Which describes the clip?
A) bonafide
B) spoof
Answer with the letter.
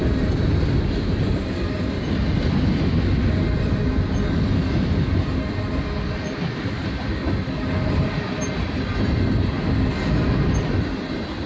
A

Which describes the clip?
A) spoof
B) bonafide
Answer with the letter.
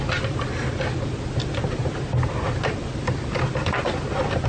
B